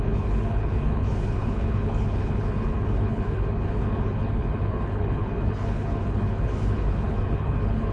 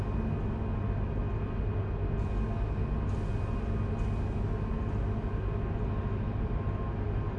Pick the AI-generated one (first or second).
first